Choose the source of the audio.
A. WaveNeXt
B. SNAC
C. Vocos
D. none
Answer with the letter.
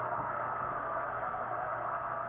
B